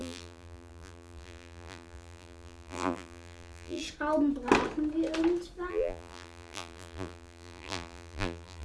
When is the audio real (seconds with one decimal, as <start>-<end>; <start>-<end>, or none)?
3.8-5.7